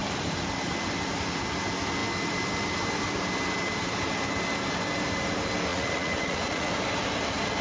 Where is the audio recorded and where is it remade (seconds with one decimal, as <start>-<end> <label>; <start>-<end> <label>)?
0.0-5.7 recorded; 5.7-6.7 remade; 6.7-7.6 recorded